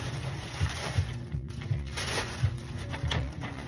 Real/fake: fake